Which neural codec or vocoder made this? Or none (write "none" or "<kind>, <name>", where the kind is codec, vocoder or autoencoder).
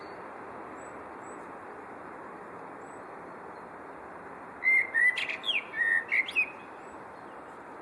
none